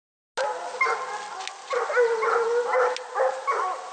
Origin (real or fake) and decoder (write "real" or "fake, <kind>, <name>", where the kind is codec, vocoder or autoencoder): real